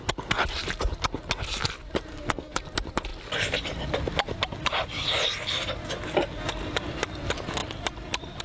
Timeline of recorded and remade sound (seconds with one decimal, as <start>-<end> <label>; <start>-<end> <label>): 0.0-2.1 recorded; 2.1-2.6 remade; 2.6-8.4 recorded